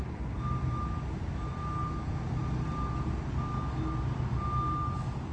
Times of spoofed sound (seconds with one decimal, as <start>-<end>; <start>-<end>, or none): none